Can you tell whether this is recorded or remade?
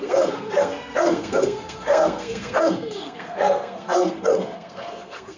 remade